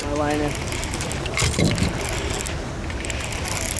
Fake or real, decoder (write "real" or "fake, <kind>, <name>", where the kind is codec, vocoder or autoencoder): real